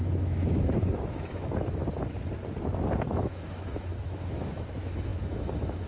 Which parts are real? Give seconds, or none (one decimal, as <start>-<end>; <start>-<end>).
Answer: 1.8-3.0